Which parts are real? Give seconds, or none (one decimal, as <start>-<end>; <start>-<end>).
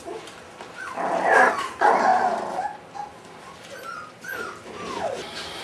0.0-5.6